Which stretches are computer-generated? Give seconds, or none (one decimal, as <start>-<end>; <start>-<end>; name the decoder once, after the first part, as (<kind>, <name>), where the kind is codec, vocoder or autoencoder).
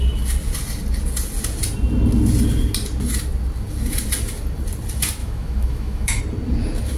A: 5.2-6.2 (autoencoder, DAC-VAE)